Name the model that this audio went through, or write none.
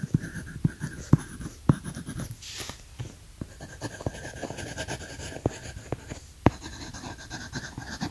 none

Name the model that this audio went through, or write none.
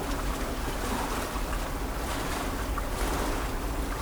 none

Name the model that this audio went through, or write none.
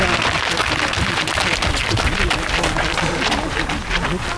none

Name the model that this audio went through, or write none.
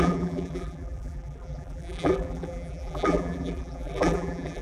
vocoder, BigVGAN v2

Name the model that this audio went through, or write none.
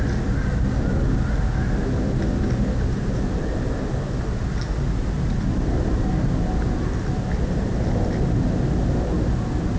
none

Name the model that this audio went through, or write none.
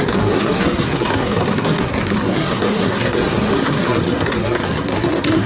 codec, SNAC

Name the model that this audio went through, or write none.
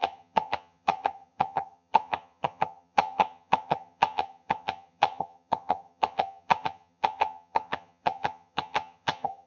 vocoder, HiFi-GAN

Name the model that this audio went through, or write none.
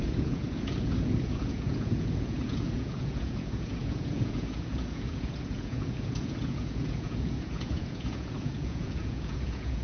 vocoder, Vocos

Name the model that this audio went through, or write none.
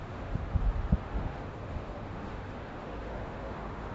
autoencoder, DAC-VAE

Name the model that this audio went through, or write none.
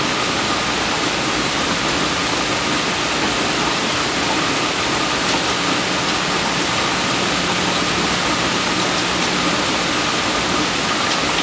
none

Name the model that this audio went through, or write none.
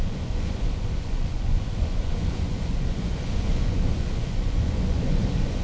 vocoder, Vocos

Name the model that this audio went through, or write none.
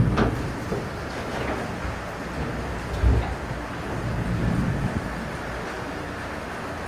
none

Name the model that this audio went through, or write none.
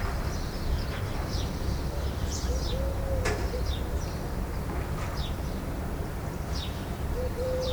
vocoder, BigVGAN v2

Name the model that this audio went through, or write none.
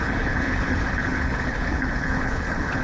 codec, HILCodec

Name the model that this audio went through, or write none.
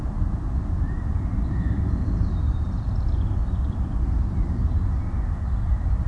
vocoder, BigVGAN v2